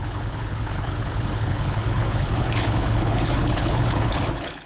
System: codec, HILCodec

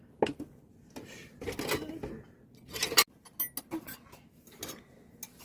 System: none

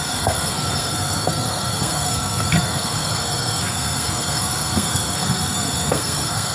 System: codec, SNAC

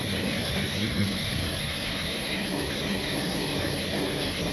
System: codec, SNAC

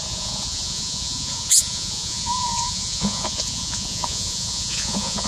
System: vocoder, Vocos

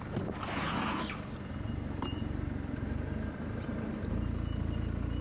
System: none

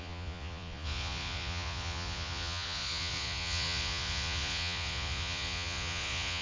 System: vocoder, Vocos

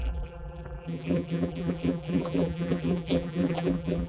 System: vocoder, BigVGAN v2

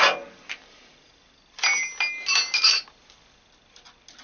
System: none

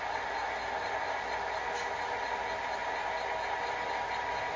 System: none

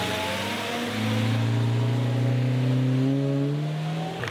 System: none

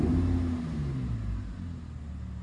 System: none